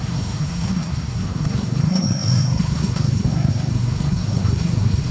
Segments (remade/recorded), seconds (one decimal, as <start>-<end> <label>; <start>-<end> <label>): 0.0-5.1 remade